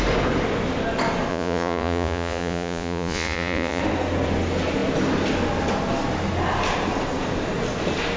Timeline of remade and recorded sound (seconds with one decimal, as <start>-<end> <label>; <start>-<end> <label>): 0.0-1.3 recorded; 1.3-3.8 remade; 3.8-8.2 recorded